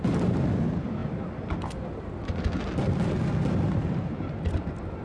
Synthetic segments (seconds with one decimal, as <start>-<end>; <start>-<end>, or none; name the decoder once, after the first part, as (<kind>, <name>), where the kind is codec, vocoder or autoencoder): none